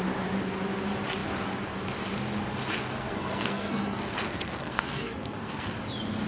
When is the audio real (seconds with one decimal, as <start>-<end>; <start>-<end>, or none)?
0.0-3.0; 5.7-6.3